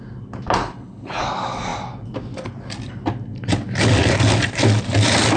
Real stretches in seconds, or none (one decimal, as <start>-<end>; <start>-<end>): 0.0-0.6; 1.2-5.4